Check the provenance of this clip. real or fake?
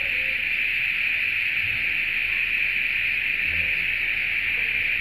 real